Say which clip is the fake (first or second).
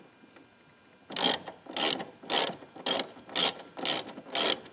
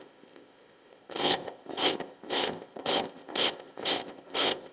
second